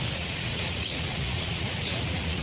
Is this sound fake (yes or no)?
yes